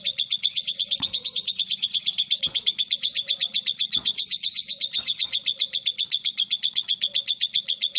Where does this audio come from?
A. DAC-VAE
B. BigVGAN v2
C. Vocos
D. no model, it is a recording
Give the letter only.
C